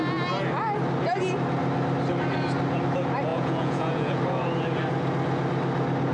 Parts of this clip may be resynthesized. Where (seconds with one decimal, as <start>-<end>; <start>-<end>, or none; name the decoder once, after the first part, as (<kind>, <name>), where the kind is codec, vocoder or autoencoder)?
3.3-4.2 (vocoder, Vocos)